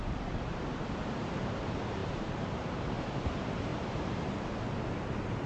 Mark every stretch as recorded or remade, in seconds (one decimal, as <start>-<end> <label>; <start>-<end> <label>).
0.0-3.7 remade; 3.7-5.5 recorded